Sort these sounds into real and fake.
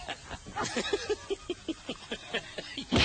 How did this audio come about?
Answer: real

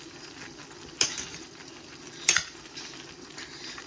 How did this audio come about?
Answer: real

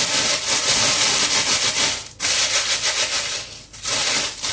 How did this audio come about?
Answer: real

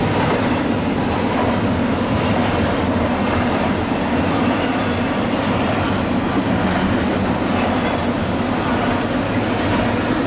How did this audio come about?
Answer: real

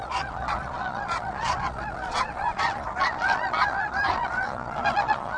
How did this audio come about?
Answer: fake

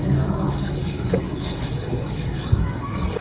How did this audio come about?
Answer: fake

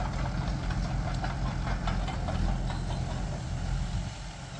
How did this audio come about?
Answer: real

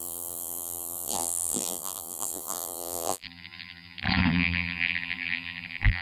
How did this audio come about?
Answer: fake